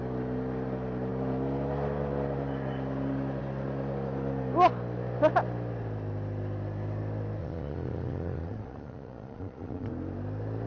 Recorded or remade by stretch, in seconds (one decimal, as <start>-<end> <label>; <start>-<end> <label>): 0.0-7.4 recorded; 7.4-9.9 remade; 9.9-10.7 recorded